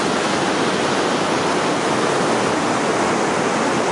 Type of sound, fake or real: real